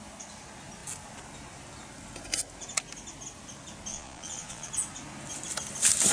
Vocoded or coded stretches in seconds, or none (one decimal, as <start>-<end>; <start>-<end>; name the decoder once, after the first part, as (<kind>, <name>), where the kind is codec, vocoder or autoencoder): 3.9-4.7 (vocoder, Vocos)